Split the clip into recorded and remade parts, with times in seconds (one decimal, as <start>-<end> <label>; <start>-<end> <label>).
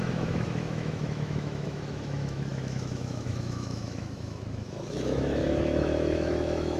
0.0-6.8 remade